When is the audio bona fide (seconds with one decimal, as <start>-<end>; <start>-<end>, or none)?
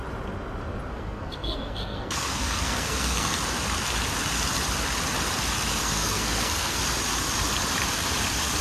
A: 0.0-0.9; 3.4-5.8; 6.8-8.6